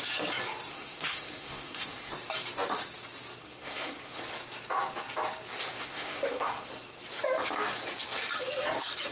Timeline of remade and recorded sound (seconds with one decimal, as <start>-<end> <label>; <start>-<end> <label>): 0.0-0.7 recorded; 0.7-2.1 remade; 2.1-3.4 recorded; 3.4-4.2 remade; 4.2-5.8 recorded; 5.8-6.7 remade; 6.7-9.1 recorded